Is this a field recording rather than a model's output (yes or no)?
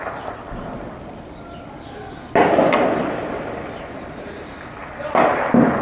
yes